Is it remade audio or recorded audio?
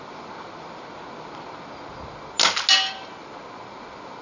recorded